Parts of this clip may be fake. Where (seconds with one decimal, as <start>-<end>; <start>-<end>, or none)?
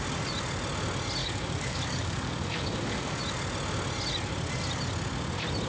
1.2-3.2